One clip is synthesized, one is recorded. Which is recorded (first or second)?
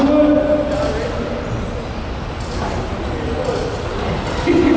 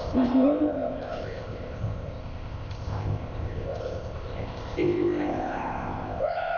first